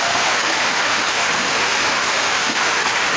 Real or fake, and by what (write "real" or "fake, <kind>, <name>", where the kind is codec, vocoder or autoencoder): fake, autoencoder, DAC-VAE